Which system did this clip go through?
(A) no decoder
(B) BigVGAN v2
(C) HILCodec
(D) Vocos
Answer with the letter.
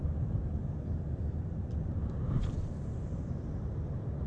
B